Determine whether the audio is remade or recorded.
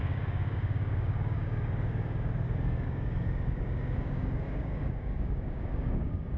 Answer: remade